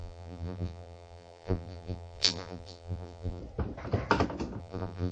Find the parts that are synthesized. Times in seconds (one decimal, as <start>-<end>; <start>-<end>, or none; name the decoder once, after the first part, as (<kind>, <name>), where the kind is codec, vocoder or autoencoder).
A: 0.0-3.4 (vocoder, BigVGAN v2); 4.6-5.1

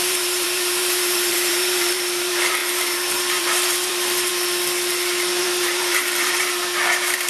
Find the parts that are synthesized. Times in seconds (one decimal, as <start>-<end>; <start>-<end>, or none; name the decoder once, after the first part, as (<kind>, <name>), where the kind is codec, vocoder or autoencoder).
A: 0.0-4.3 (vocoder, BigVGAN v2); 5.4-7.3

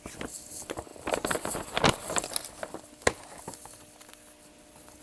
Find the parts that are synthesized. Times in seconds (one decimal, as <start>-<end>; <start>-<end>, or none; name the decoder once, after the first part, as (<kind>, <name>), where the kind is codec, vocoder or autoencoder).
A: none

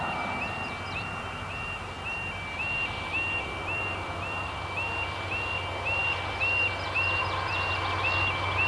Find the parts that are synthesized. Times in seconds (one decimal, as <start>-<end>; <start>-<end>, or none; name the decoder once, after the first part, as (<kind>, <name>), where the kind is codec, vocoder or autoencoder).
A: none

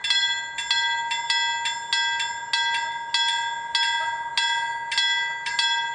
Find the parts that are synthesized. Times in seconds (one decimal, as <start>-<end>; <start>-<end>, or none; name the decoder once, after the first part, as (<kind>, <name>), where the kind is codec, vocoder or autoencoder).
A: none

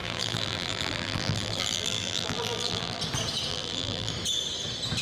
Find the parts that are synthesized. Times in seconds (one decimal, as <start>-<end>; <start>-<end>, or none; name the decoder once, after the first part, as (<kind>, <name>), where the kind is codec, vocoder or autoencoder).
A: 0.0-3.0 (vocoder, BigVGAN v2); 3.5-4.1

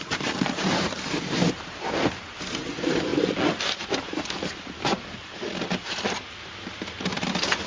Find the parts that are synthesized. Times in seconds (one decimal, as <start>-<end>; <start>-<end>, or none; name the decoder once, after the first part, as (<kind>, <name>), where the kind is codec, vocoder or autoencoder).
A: 0.0-3.1 (vocoder, BigVGAN v2); 3.9-5.3; 5.8-7.7

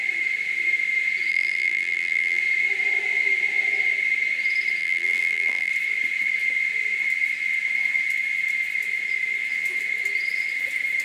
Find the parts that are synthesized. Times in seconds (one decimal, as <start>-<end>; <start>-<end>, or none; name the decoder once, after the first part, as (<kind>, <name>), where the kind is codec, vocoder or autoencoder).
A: 1.3-2.4 (vocoder, BigVGAN v2); 4.8-5.7